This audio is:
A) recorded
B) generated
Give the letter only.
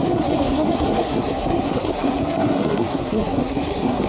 B